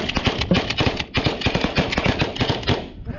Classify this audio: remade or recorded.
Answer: recorded